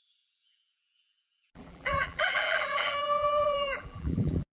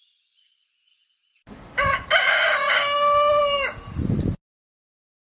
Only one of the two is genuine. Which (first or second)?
second